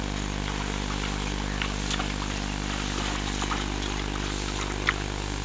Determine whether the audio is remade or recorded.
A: recorded